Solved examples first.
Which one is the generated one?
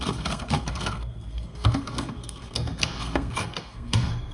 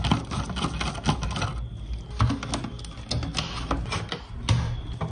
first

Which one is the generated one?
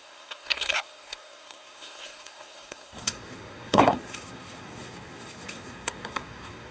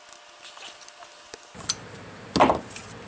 first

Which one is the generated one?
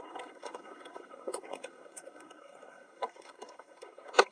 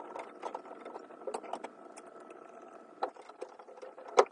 first